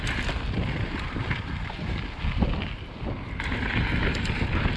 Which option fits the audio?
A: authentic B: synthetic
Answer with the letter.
A